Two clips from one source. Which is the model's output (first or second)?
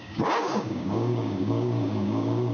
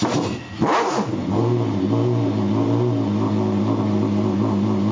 first